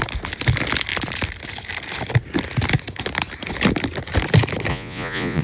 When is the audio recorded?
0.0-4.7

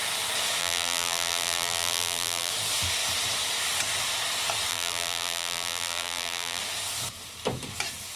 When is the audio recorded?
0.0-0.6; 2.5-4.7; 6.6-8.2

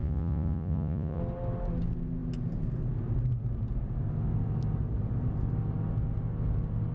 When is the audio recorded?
1.2-6.9